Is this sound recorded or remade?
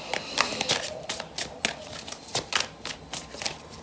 recorded